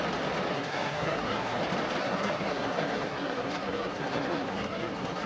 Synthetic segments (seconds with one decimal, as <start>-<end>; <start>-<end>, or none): 0.5-1.6; 2.0-5.3